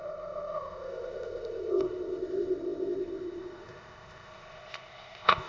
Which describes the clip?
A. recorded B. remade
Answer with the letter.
B